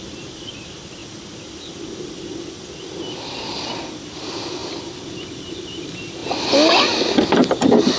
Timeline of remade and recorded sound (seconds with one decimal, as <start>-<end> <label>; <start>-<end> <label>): 0.0-8.0 recorded